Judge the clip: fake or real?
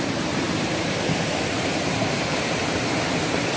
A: fake